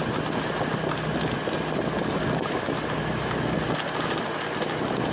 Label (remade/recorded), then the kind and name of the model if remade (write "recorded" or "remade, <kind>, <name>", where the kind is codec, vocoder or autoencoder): recorded